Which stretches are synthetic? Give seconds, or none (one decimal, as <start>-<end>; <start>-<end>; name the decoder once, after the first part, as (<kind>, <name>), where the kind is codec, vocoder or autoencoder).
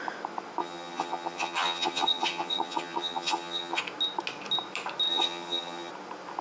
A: 0.6-3.8 (vocoder, HiFi-GAN); 5.1-5.9